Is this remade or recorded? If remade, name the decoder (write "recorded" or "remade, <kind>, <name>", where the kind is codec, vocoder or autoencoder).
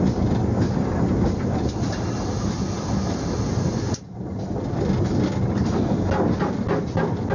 recorded